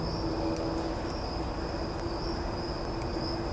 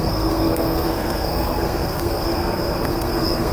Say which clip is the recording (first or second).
first